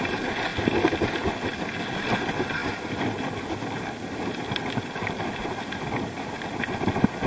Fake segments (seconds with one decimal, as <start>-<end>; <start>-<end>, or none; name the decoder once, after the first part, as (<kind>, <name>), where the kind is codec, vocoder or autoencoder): none

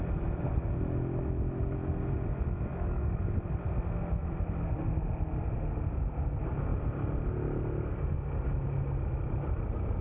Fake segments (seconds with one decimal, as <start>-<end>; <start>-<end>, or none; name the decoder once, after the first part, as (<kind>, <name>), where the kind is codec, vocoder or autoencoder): 2.7-3.2 (codec, DAC)

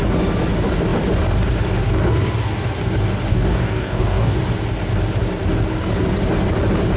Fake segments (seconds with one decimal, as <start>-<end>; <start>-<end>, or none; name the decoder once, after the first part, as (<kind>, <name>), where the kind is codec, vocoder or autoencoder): 3.3-4.4 (codec, DAC)

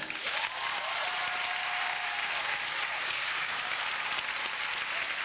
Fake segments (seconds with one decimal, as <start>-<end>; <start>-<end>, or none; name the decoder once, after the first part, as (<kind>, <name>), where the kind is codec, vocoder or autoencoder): 0.0-0.9 (codec, DAC); 1.6-3.8

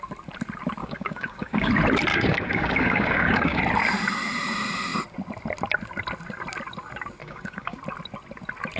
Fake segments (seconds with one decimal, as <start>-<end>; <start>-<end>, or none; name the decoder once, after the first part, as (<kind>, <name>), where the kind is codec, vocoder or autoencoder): 0.8-1.7 (codec, DAC); 2.1-3.6; 7.2-7.8

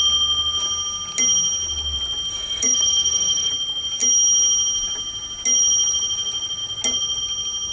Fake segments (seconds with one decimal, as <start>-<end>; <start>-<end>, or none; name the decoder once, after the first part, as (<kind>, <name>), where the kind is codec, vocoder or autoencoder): 2.3-3.5 (codec, DAC)

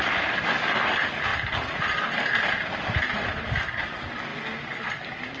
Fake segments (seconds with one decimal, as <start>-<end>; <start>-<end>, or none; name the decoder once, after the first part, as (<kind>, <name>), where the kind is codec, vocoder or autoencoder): none